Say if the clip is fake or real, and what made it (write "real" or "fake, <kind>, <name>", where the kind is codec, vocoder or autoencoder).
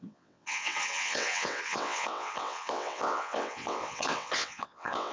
fake, vocoder, WaveNeXt